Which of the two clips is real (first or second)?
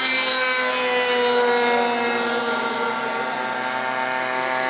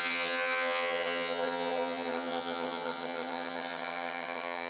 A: first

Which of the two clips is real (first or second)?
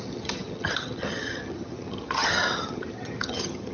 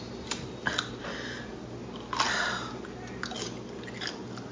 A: second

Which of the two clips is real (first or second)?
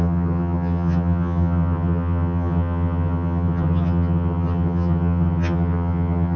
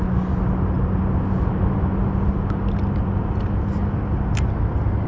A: second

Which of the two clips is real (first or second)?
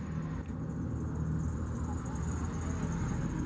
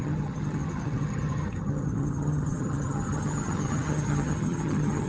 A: first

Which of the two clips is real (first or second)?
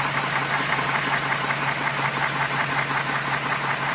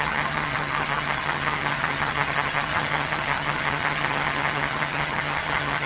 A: first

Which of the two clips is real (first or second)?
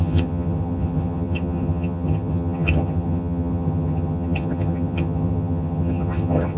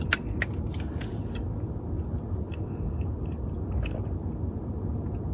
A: second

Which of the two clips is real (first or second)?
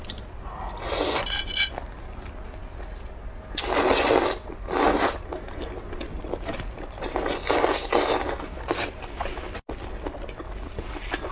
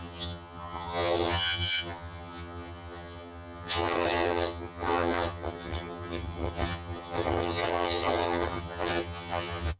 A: first